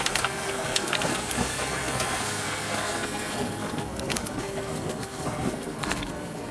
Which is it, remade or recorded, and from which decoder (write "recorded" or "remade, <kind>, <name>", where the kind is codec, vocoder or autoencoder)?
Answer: remade, codec, SNAC